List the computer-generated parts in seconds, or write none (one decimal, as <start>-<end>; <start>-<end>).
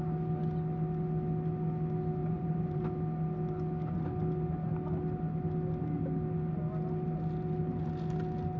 2.2-2.8